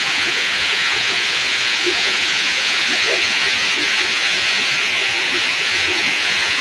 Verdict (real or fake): fake